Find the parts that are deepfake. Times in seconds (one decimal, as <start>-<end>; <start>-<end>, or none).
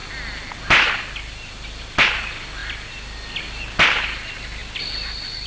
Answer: none